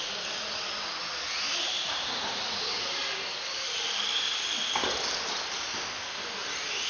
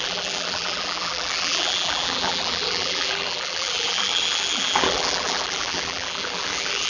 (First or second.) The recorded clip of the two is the first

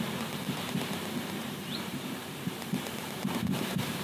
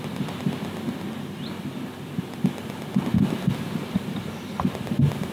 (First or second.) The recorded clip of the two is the second